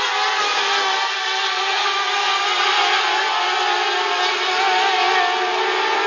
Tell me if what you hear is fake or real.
real